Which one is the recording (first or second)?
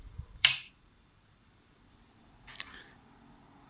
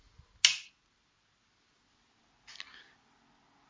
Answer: second